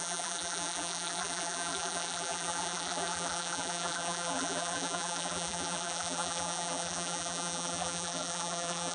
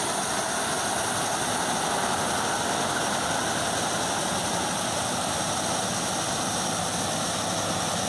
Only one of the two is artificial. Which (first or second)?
first